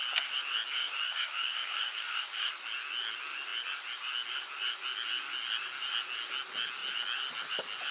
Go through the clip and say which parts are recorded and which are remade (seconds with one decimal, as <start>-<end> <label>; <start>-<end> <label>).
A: 0.0-0.8 recorded; 0.8-2.5 remade; 2.5-7.9 recorded